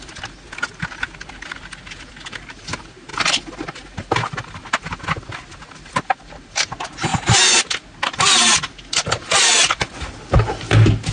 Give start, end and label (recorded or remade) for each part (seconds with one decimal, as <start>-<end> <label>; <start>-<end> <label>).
0.0-11.1 recorded